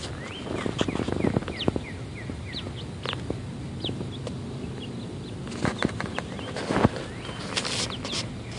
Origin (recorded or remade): recorded